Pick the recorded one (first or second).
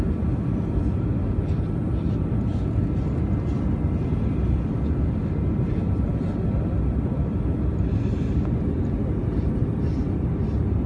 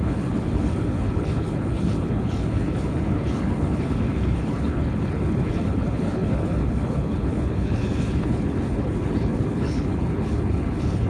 first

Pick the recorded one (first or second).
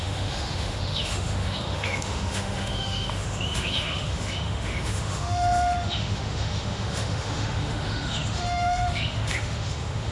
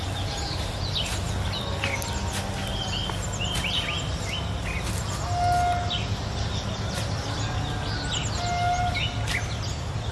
second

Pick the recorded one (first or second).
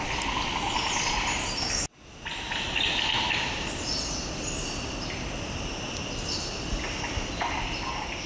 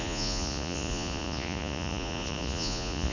first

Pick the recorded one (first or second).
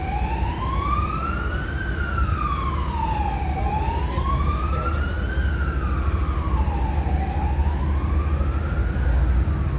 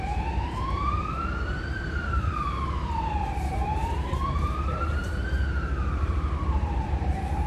first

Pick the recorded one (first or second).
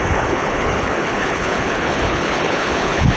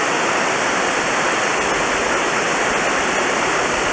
second